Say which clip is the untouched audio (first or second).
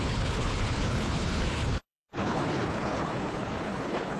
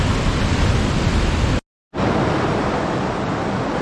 second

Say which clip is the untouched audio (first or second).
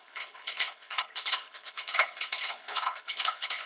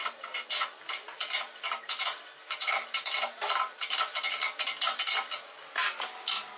second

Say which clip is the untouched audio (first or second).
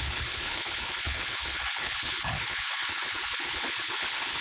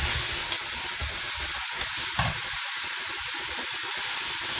second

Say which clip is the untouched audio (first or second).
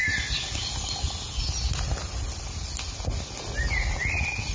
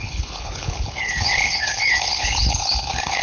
first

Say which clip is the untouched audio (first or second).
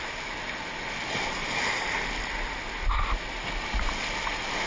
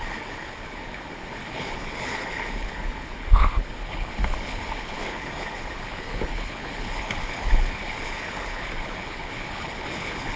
first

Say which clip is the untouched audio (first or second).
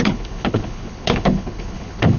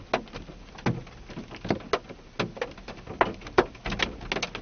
second